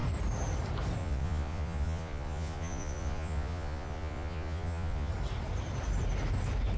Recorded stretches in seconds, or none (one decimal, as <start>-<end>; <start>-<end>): 0.0-1.0; 5.1-6.8